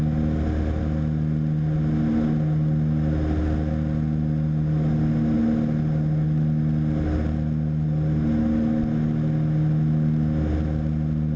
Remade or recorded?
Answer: recorded